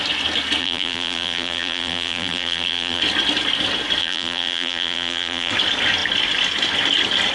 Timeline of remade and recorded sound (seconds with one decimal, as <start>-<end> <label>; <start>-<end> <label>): 0.0-0.6 recorded; 0.6-3.0 remade; 3.0-4.0 recorded; 4.0-5.5 remade; 5.5-7.3 recorded